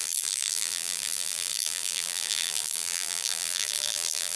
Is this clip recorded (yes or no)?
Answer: no